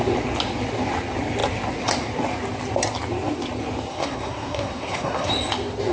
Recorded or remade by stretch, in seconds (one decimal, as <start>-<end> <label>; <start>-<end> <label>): 0.0-3.9 recorded; 3.9-5.3 remade; 5.3-5.9 recorded